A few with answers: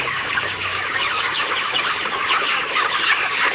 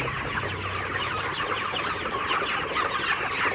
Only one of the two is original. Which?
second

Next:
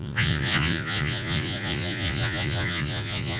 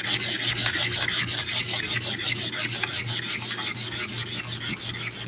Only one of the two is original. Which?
second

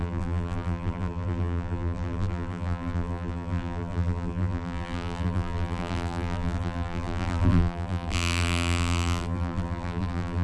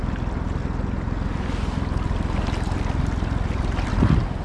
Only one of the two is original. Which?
second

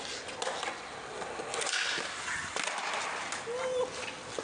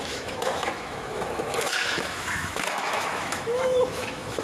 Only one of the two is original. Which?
first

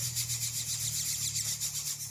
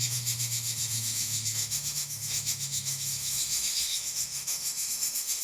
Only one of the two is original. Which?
first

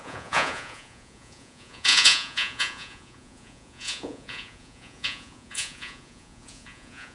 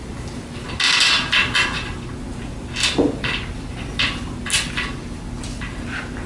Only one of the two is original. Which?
second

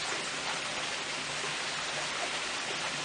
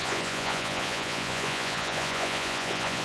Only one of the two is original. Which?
first